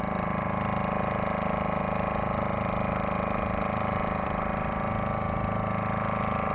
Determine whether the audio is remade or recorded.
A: recorded